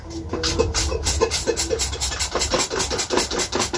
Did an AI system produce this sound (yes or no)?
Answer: no